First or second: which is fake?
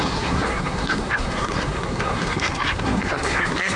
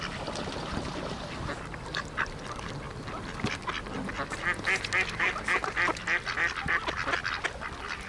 first